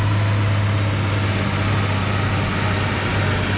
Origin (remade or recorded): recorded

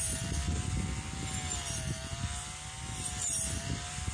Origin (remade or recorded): recorded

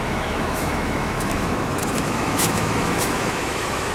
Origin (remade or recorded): remade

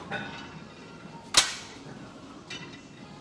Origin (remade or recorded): recorded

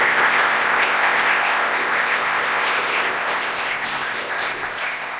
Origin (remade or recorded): remade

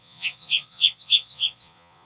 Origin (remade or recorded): remade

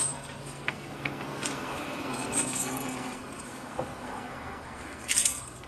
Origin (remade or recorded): remade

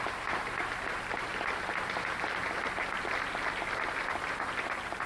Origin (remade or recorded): recorded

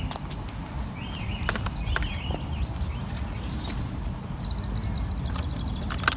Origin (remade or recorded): recorded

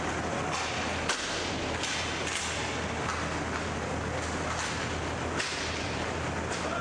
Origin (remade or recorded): recorded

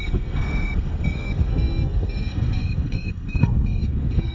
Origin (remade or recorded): remade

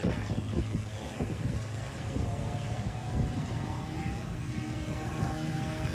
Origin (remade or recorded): remade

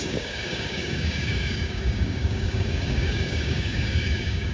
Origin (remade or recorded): remade